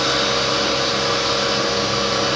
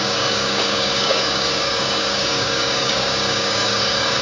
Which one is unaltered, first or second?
first